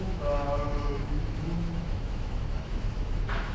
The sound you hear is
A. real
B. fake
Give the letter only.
B